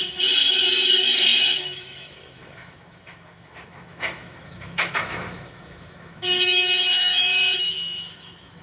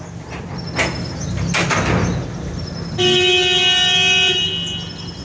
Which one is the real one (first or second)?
second